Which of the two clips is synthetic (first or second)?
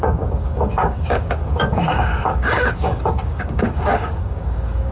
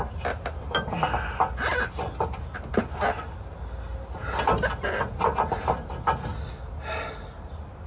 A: first